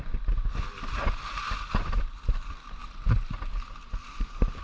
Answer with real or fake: real